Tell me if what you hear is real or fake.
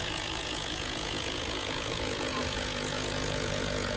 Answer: fake